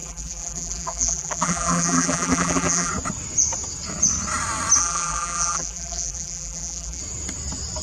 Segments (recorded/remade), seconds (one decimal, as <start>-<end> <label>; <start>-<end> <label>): 0.0-2.9 remade; 2.9-4.8 recorded; 4.8-7.0 remade; 7.0-7.8 recorded